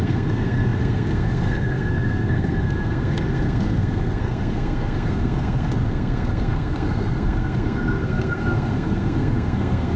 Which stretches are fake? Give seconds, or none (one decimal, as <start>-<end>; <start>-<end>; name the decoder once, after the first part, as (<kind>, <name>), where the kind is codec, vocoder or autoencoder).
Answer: 0.0-10.0 (codec, SNAC)